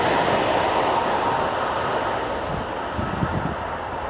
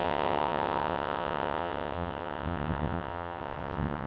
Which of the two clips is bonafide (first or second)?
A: first